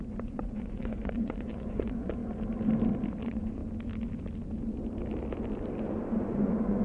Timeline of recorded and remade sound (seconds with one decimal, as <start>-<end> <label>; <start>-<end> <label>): 0.0-2.2 remade; 2.2-3.2 recorded; 3.2-3.6 remade; 3.6-6.2 recorded; 6.2-6.8 remade